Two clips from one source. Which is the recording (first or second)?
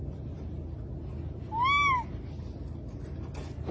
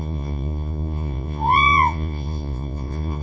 first